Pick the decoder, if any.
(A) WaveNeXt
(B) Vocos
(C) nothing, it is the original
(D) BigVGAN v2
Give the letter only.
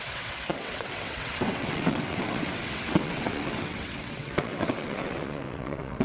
A